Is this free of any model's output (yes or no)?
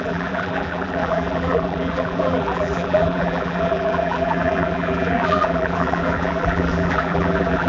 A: no